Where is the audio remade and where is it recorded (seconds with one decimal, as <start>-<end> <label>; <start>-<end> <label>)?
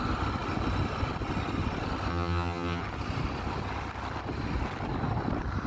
0.0-2.1 recorded; 2.1-2.8 remade; 2.8-5.7 recorded